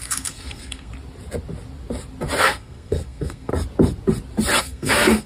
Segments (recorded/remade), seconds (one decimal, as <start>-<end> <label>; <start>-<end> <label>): 0.0-0.9 remade; 0.9-2.4 recorded; 2.4-3.5 remade; 3.5-4.6 recorded; 4.6-5.3 remade